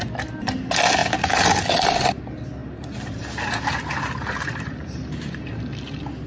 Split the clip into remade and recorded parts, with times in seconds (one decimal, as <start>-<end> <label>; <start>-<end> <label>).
0.0-2.6 recorded; 2.6-5.6 remade; 5.6-6.3 recorded